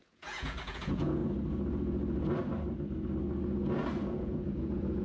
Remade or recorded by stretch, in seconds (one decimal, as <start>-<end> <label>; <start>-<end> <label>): 0.0-1.2 remade; 1.2-4.2 recorded; 4.2-5.0 remade

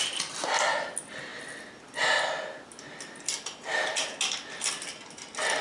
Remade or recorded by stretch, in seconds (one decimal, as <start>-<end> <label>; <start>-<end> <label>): 0.0-5.6 recorded

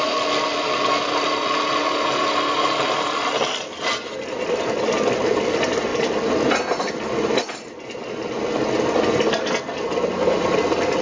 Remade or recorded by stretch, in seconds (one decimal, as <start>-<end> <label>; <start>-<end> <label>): 0.0-11.0 recorded

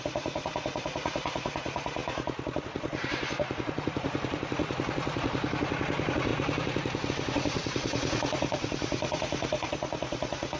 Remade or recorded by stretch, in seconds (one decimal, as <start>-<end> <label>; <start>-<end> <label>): 0.0-2.0 remade; 2.0-2.6 recorded; 2.6-10.6 remade